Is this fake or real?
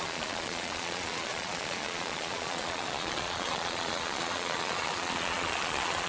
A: fake